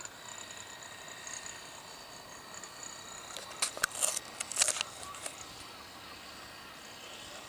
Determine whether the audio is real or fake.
real